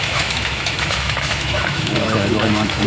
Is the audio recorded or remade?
remade